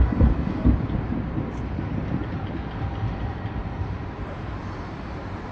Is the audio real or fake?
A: fake